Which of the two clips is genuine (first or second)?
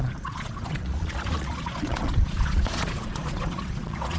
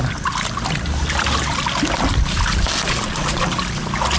second